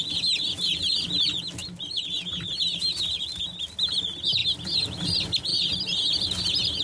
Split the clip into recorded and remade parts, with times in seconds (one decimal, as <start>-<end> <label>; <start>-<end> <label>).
0.0-6.8 recorded